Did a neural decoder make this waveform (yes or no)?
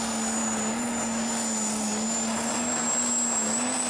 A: no